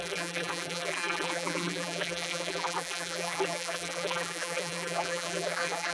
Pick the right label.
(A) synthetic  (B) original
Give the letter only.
A